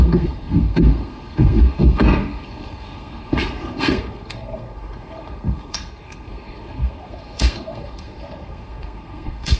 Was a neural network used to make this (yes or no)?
yes